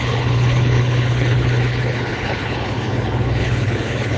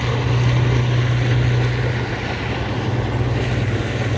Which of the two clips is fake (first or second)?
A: first